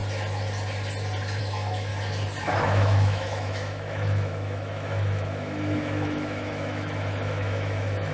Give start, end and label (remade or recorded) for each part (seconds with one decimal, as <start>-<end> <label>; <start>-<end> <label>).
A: 0.0-1.4 recorded; 1.4-1.9 remade; 1.9-2.6 recorded; 2.6-8.1 remade